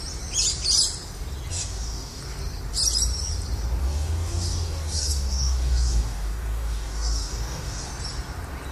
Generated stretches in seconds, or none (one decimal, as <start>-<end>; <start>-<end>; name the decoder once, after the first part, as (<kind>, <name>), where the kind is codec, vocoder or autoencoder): 1.5-2.2 (codec, DAC); 3.8-7.9